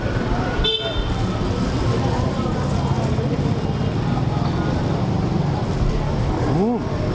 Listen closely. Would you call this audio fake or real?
real